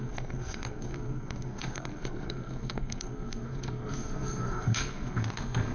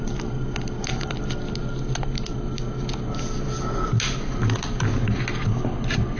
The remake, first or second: first